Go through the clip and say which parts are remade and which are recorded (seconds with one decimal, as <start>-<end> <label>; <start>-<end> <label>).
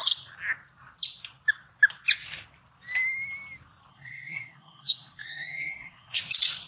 0.0-3.9 recorded; 3.9-6.2 remade; 6.2-6.7 recorded